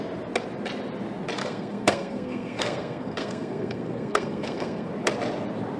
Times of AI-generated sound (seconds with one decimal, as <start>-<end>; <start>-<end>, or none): 1.4-4.9